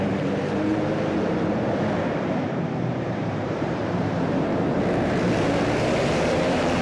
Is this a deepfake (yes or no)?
yes